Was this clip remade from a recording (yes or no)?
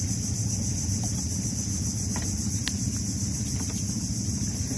no